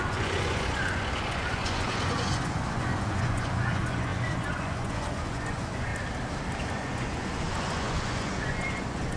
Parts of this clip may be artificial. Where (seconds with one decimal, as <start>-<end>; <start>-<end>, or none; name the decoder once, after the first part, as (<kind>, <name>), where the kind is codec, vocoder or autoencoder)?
0.0-5.9 (vocoder, Vocos); 6.7-9.2